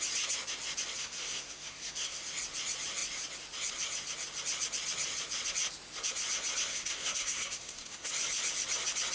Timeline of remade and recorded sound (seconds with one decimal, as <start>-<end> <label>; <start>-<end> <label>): 0.0-1.0 recorded; 1.0-2.2 remade; 2.2-6.7 recorded; 6.7-8.1 remade; 8.1-9.1 recorded